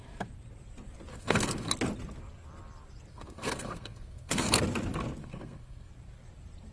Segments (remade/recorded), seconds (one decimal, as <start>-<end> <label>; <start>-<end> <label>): 0.0-1.1 recorded; 1.1-1.7 remade; 1.7-3.1 recorded; 3.1-4.6 remade; 4.6-5.2 recorded; 5.2-5.9 remade; 5.9-6.7 recorded